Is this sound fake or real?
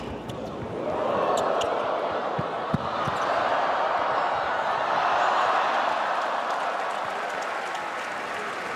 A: real